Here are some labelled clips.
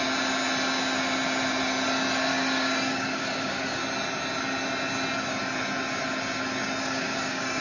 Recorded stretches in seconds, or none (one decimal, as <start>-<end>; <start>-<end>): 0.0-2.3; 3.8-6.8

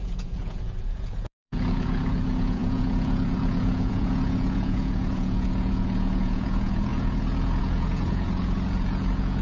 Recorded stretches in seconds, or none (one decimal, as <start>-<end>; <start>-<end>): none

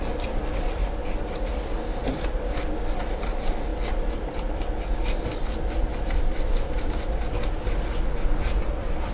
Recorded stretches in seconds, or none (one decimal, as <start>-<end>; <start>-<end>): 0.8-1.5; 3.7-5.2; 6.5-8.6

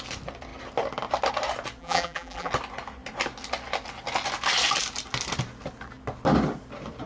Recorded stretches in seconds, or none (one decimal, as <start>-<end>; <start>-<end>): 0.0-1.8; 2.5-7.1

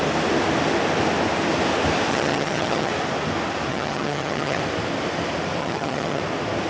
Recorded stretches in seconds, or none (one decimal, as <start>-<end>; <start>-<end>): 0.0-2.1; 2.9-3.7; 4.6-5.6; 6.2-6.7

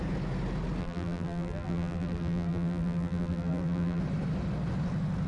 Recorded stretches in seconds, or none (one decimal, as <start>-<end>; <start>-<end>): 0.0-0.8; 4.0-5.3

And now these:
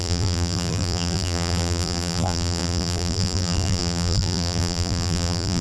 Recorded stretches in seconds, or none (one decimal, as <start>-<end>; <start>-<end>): none

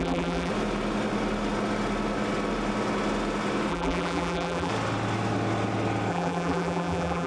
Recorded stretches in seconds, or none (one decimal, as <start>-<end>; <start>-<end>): 0.5-3.7; 4.7-6.1